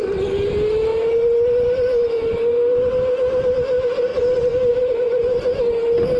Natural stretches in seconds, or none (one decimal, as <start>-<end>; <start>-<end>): 0.0-6.2